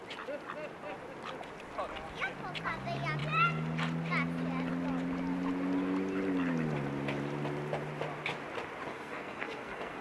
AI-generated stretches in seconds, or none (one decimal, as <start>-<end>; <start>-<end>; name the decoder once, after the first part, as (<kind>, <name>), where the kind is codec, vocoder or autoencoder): 8.9-10.0 (codec, SNAC)